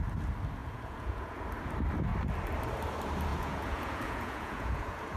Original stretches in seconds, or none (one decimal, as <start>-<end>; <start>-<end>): 0.0-0.6; 1.4-3.3

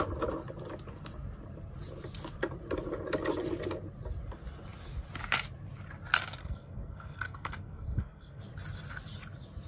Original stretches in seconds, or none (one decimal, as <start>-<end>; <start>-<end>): 0.0-6.4; 8.4-9.7

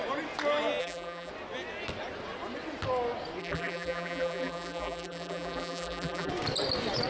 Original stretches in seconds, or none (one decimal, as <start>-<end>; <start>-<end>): 0.0-0.8; 1.3-3.4; 6.3-7.1

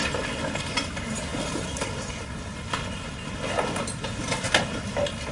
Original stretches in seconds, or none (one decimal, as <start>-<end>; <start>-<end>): 0.0-5.3